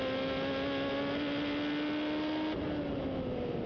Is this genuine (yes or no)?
yes